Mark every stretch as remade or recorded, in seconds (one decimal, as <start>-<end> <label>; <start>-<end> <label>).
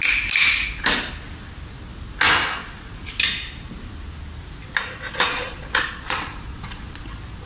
0.0-5.3 recorded; 5.3-7.0 remade; 7.0-7.5 recorded